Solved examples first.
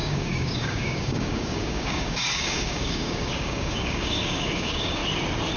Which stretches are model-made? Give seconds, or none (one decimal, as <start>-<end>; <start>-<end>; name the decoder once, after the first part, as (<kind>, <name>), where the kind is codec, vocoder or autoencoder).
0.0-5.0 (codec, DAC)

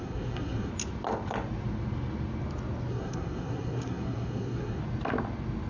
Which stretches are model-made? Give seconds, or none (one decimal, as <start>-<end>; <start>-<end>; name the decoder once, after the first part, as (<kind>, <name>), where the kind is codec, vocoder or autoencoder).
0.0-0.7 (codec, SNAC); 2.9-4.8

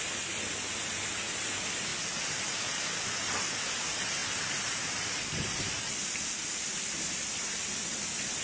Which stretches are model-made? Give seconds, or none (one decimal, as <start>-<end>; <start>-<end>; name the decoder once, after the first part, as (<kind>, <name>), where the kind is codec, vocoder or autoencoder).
none